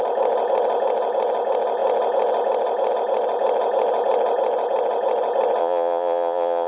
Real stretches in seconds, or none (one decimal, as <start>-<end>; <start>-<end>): 0.0-5.6

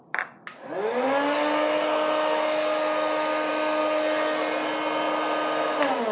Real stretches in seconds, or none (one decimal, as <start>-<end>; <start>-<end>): 0.0-6.1

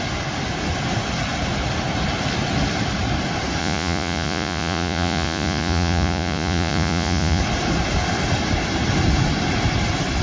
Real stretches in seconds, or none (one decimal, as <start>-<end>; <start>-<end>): 0.0-3.6; 7.4-10.2

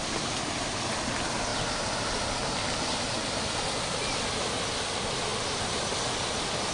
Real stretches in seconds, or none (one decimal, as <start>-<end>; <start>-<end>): 0.0-6.7